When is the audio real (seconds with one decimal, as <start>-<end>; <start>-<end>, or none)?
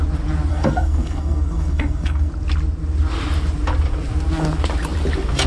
0.0-0.5; 2.3-5.5